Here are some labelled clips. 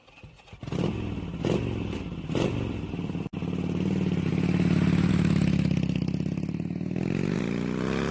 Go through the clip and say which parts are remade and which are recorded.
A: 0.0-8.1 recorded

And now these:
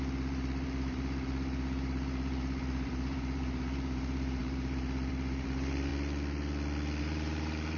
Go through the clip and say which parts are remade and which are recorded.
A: 0.0-5.9 remade; 5.9-7.0 recorded; 7.0-7.8 remade

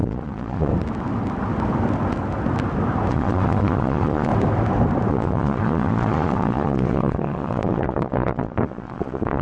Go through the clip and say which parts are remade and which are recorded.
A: 0.0-0.7 remade; 0.7-3.1 recorded; 3.1-4.3 remade; 4.3-5.1 recorded; 5.1-9.4 remade

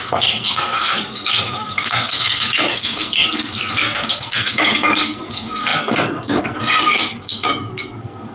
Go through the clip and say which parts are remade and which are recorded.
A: 0.0-8.3 remade

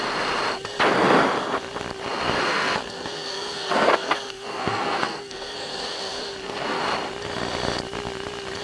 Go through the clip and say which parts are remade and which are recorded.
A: 0.0-2.5 recorded; 2.5-6.8 remade; 6.8-8.6 recorded

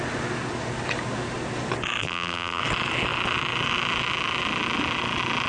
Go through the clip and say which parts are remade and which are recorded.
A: 0.0-2.0 recorded; 2.0-2.6 remade; 2.6-5.5 recorded

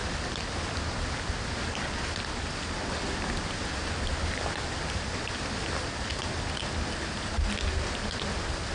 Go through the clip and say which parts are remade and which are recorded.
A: 0.0-8.7 recorded